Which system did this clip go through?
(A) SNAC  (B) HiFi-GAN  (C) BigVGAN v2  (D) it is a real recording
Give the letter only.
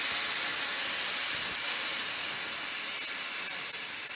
D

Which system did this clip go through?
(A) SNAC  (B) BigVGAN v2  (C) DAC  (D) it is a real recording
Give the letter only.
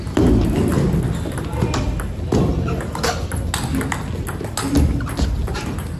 D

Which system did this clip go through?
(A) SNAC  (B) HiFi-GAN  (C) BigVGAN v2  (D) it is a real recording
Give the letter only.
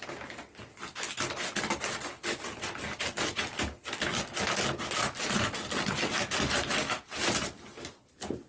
D